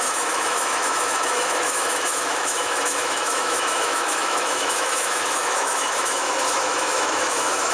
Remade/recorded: remade